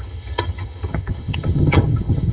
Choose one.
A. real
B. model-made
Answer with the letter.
B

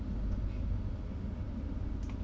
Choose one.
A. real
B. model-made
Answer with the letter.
A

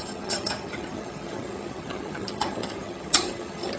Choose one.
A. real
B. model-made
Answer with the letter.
B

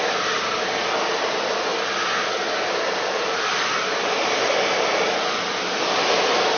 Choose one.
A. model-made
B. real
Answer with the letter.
B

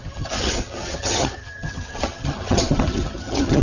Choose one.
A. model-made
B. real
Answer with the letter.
A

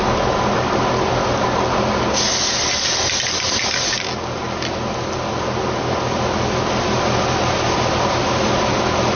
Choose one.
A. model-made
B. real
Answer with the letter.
B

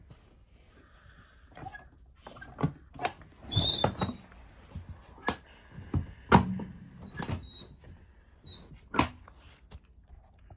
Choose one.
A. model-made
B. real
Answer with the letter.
B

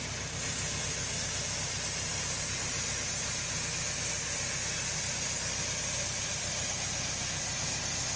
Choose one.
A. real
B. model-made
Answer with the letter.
A